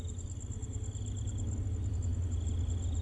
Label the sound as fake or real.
real